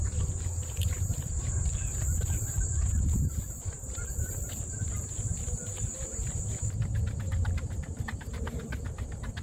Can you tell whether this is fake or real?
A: fake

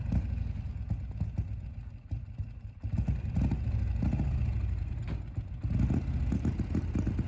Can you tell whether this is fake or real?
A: real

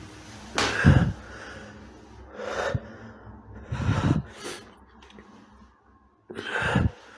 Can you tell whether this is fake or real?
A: real